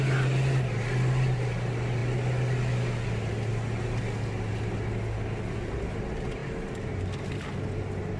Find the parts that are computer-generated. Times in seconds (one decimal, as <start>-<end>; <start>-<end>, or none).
none